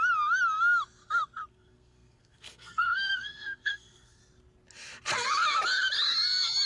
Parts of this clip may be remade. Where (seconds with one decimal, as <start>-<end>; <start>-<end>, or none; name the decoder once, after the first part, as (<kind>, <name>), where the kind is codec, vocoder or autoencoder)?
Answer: 1.5-4.2 (codec, SNAC)